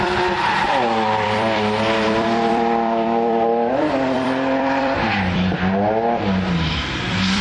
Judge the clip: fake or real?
fake